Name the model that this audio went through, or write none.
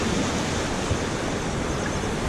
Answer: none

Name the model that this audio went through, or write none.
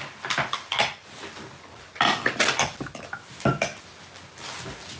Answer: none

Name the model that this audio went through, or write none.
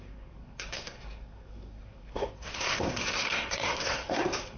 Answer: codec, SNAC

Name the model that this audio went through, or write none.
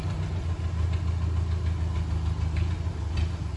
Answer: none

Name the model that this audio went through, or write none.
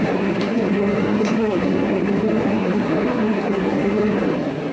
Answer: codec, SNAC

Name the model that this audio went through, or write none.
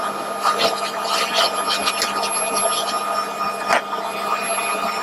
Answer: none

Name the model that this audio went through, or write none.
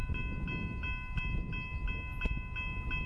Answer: none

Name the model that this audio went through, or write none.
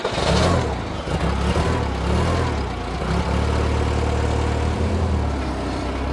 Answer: none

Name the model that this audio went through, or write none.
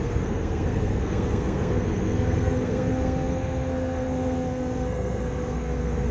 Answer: codec, SNAC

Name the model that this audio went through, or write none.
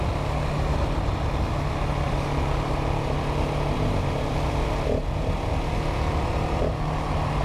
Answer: none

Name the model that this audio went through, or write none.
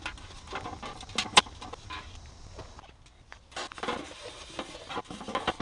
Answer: none